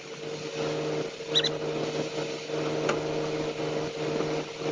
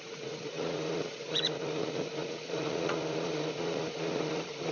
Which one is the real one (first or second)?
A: first